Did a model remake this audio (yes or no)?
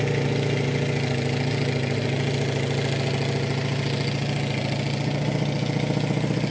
no